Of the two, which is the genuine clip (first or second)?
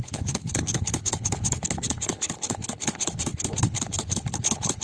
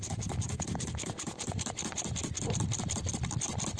second